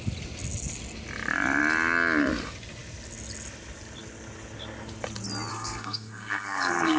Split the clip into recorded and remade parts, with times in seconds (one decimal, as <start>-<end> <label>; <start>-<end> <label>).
0.0-5.5 recorded; 5.5-7.0 remade